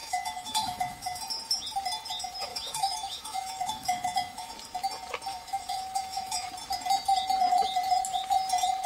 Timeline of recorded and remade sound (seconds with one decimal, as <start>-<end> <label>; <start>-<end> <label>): 0.0-1.2 remade; 1.2-2.5 recorded; 2.5-4.5 remade; 4.5-5.3 recorded; 5.3-6.5 remade; 6.5-8.9 recorded